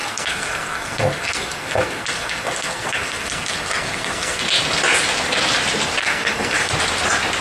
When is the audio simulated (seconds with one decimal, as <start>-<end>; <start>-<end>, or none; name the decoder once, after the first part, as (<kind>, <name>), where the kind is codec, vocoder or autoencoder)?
0.0-4.4 (codec, SNAC); 6.0-6.7